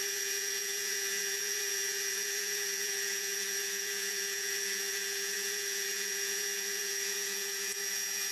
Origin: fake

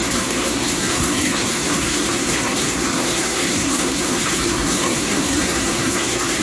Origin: fake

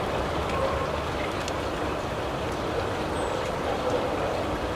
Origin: real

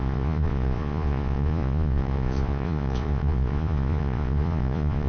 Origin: fake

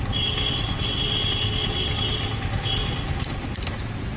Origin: real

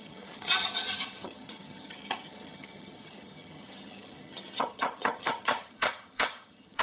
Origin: fake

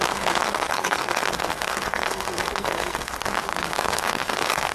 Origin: fake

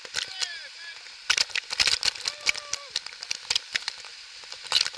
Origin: real